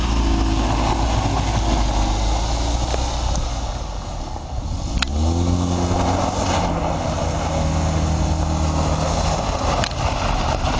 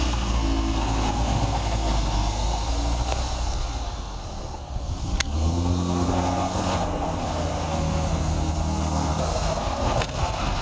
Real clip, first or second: first